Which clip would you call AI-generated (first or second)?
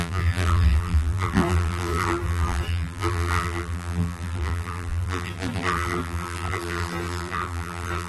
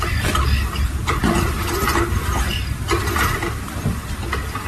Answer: first